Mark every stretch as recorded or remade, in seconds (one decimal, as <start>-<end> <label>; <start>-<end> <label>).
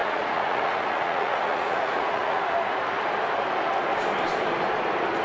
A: 0.0-2.4 remade; 2.4-5.2 recorded